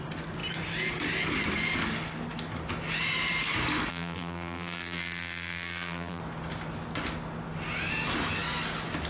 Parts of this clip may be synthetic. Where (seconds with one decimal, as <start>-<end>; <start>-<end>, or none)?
3.9-6.2